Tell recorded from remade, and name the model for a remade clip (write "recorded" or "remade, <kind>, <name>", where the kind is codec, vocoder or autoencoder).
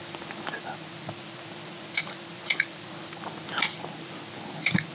recorded